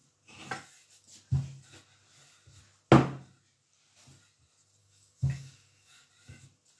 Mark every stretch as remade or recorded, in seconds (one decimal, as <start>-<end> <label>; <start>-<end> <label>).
0.0-4.8 recorded; 4.8-6.1 remade; 6.1-6.8 recorded